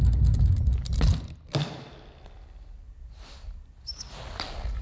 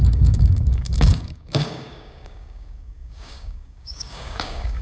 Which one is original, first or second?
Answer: first